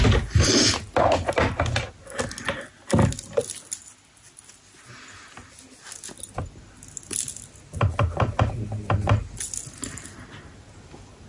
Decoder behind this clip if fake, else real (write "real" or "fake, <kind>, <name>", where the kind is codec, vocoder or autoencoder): real